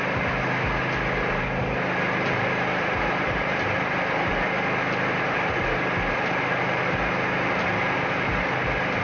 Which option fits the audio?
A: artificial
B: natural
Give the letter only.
B